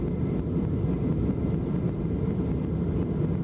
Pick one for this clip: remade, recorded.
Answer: recorded